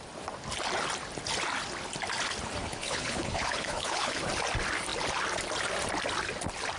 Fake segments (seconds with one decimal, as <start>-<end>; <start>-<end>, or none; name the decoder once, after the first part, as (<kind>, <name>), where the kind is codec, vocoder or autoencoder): 2.6-4.2 (codec, HILCodec)